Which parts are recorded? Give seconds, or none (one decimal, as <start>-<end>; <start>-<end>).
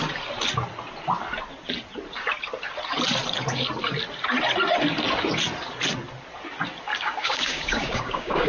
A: 0.0-6.9